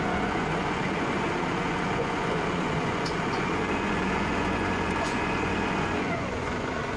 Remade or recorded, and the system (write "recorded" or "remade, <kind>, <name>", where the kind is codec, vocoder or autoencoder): remade, vocoder, Vocos